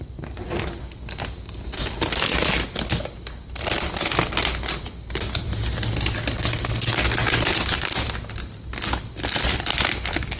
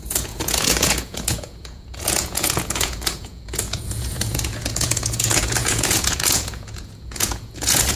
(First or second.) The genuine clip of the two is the first